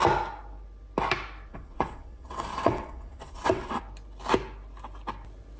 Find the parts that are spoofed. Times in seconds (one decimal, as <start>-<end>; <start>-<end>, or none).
1.5-3.8